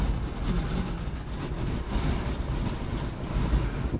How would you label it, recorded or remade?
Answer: recorded